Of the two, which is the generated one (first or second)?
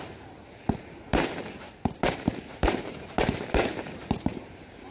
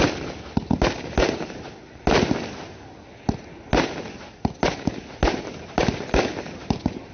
first